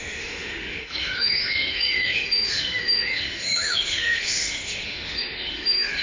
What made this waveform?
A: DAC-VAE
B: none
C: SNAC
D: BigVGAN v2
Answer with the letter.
A